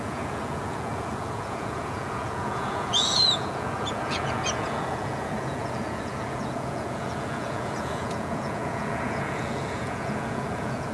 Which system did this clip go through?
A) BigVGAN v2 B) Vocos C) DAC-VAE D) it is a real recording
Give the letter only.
B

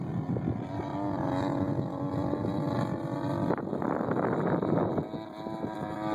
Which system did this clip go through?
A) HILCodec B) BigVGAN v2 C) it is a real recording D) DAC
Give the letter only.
C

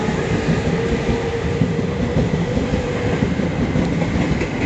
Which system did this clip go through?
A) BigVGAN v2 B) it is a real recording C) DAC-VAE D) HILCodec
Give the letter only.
B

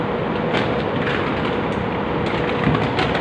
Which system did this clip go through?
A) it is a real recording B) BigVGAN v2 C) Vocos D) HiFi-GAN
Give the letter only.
A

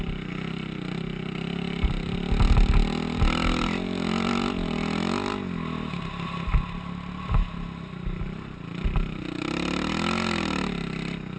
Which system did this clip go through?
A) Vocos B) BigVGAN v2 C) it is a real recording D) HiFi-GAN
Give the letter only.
C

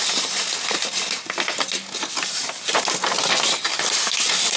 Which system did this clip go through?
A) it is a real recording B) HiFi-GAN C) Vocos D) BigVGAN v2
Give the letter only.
A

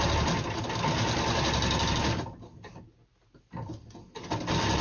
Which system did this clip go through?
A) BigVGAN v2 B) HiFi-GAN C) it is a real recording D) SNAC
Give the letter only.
C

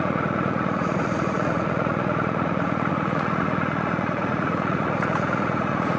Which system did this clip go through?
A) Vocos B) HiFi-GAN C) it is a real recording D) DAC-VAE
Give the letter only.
A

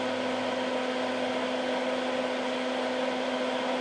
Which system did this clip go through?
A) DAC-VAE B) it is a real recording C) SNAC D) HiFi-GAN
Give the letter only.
B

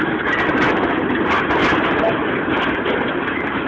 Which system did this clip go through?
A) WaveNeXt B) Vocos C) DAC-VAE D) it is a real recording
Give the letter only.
D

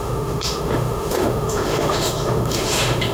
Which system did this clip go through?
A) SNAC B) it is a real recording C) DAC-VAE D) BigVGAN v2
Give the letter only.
C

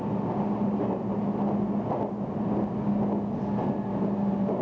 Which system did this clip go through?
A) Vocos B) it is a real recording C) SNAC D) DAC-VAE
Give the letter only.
B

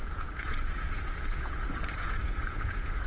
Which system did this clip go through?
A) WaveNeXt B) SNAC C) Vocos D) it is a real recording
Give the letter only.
C